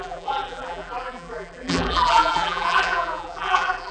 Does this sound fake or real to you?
fake